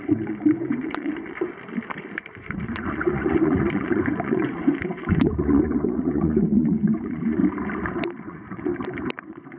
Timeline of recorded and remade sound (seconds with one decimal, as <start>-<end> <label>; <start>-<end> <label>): 0.0-1.5 remade; 1.5-2.1 recorded; 2.1-7.4 remade; 7.4-8.2 recorded; 8.2-8.7 remade; 8.7-9.2 recorded; 9.2-9.6 remade

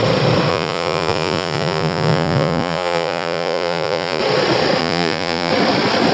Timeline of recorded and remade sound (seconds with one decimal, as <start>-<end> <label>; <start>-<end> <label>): 0.0-0.5 recorded; 0.5-4.2 remade; 4.2-4.8 recorded; 4.8-5.5 remade; 5.5-6.1 recorded